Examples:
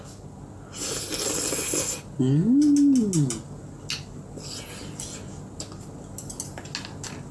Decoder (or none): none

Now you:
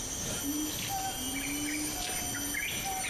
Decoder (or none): none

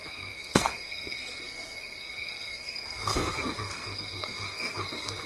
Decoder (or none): codec, SNAC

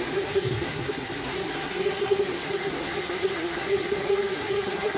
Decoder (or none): codec, SNAC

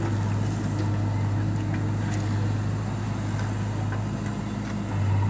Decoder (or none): none